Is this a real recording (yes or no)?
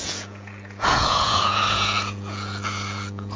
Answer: no